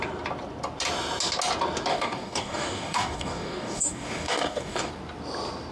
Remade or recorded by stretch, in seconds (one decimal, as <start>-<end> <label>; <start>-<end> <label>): 0.0-1.9 recorded; 1.9-4.9 remade; 4.9-5.7 recorded